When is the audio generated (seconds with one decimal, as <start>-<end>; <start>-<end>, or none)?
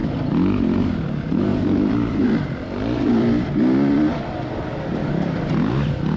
1.5-3.5